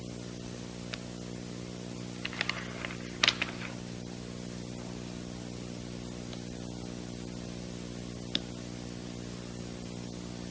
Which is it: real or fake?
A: real